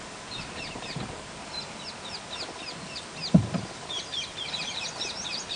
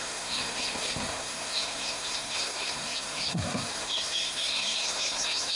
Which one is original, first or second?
first